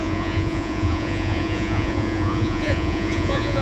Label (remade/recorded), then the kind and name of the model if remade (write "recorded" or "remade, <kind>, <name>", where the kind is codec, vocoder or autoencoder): remade, vocoder, Vocos